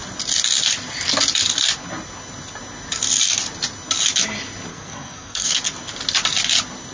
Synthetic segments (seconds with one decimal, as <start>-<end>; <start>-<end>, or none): 4.7-5.6